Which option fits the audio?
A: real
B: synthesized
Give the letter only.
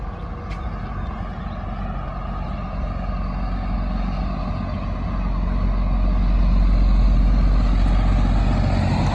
A